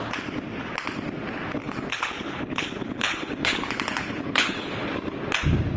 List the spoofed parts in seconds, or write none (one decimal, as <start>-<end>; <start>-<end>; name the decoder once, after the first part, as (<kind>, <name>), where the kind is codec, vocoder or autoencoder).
1.6-4.7 (codec, HILCodec)

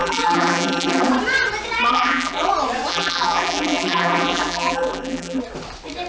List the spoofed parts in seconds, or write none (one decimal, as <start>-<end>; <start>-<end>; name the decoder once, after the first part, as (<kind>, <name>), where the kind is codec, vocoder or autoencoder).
0.0-1.1 (vocoder, BigVGAN v2); 1.9-2.5; 2.9-5.4

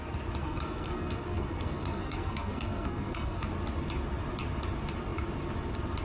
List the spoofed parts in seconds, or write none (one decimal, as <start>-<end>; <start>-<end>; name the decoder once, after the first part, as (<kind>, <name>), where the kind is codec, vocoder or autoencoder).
0.4-3.5 (codec, SNAC)

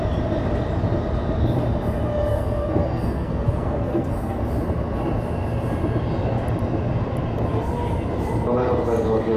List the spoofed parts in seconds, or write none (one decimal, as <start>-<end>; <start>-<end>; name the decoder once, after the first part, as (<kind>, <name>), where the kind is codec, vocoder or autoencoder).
2.3-4.4 (codec, SNAC)

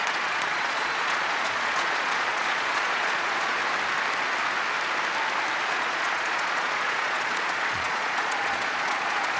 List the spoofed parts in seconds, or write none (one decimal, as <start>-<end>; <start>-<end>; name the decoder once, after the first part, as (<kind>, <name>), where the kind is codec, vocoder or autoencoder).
0.0-3.6 (vocoder, Vocos); 5.6-9.4

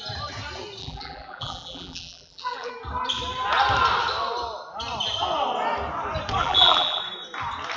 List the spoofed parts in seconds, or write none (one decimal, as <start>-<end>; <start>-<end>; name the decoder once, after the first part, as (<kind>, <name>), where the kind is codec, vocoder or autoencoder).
0.8-2.7 (vocoder, BigVGAN v2); 6.4-7.0